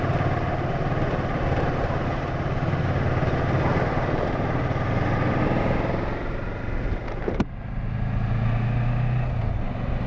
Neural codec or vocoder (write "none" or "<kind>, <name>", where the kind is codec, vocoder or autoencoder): none